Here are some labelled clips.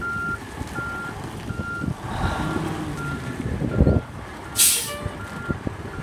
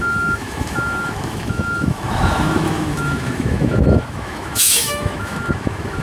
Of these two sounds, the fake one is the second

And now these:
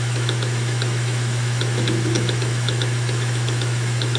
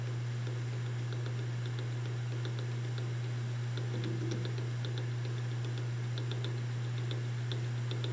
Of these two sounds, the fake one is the first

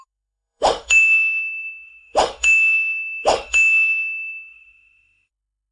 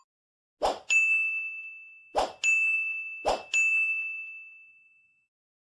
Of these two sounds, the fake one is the first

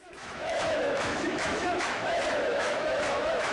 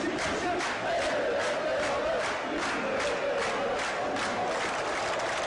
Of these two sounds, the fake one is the first